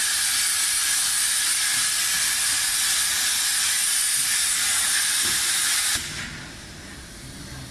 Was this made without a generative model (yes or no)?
yes